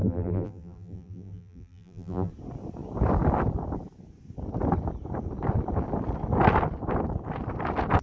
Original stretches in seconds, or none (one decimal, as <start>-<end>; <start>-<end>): 2.3-8.0